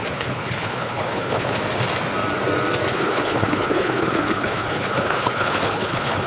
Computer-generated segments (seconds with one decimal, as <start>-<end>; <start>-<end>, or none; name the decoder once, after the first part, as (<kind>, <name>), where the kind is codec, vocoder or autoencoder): 0.0-1.6 (codec, HILCodec); 2.9-6.3